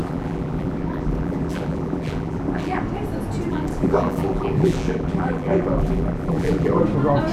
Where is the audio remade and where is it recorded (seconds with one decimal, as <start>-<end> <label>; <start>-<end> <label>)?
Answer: 0.0-2.8 remade; 2.8-3.5 recorded; 3.5-6.8 remade; 6.8-7.3 recorded